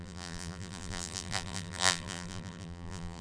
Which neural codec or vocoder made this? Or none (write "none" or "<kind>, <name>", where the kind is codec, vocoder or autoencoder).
vocoder, BigVGAN v2